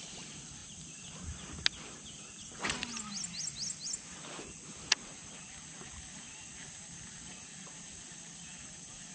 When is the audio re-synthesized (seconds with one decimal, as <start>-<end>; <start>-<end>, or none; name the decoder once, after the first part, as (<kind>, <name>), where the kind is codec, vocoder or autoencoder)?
none

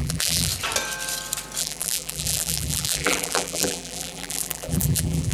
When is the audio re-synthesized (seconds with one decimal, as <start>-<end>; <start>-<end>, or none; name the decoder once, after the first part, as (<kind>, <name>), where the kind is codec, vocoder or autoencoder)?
0.0-0.5 (vocoder, BigVGAN v2); 1.6-5.3

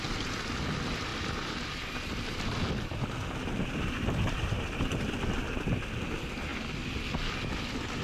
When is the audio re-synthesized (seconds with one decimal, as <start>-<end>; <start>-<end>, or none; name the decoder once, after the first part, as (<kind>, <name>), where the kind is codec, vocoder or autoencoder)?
1.1-5.9 (vocoder, BigVGAN v2)

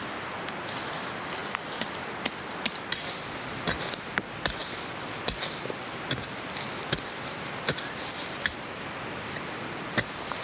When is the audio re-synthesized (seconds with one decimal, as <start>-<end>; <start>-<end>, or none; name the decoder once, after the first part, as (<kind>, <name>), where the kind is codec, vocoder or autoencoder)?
1.4-2.2 (vocoder, BigVGAN v2)

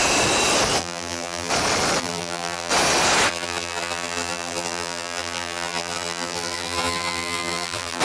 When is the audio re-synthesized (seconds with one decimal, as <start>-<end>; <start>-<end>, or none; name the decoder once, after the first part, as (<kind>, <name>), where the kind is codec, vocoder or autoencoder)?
0.8-1.5 (vocoder, BigVGAN v2); 2.0-2.7; 3.3-8.0

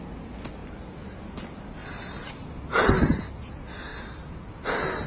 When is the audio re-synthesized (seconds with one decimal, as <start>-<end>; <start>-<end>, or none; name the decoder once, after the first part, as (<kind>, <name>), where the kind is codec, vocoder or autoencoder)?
0.6-1.2 (vocoder, BigVGAN v2); 1.8-2.9; 3.9-4.5

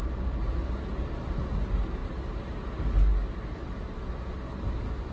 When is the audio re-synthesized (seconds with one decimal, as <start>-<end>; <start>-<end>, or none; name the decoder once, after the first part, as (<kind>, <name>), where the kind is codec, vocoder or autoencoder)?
none